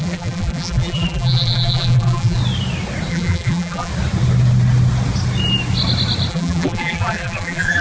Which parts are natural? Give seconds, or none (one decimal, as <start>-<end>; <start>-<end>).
2.4-3.1; 3.9-6.3